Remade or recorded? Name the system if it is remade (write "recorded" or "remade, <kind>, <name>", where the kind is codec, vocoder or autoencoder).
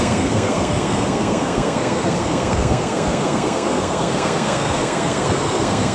remade, codec, SNAC